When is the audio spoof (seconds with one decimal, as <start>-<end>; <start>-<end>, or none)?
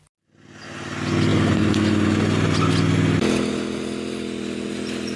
none